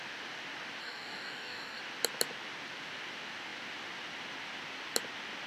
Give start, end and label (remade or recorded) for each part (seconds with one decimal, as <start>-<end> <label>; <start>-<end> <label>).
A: 0.0-0.8 recorded; 0.8-1.8 remade; 1.8-5.5 recorded